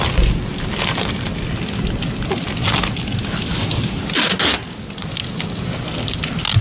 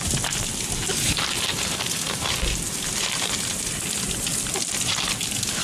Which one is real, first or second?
first